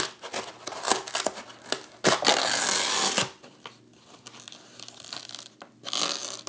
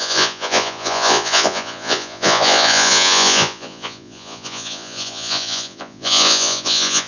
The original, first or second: first